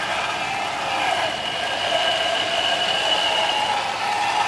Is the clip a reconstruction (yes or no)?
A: no